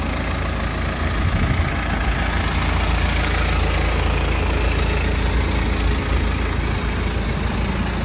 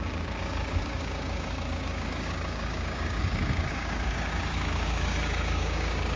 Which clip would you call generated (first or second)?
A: second